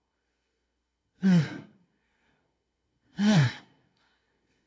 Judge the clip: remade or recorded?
remade